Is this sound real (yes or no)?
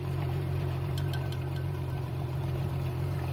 no